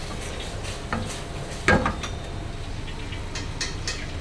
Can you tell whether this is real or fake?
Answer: real